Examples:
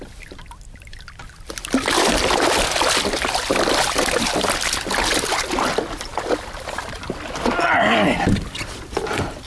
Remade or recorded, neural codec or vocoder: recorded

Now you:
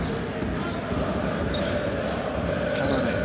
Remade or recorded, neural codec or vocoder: recorded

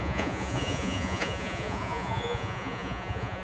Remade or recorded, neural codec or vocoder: remade, vocoder, Vocos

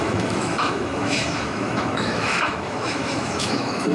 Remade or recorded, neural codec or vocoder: remade, autoencoder, DAC-VAE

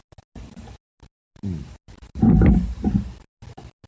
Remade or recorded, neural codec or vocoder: recorded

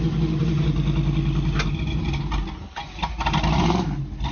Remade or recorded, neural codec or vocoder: recorded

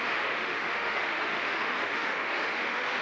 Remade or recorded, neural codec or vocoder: remade, autoencoder, DAC-VAE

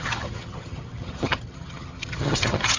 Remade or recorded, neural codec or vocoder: remade, vocoder, HiFi-GAN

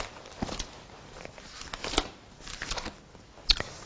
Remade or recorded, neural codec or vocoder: recorded